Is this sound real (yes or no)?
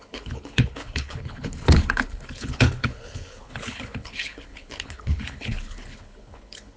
no